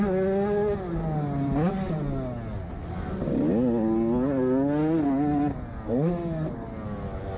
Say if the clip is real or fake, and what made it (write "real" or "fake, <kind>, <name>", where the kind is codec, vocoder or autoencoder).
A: real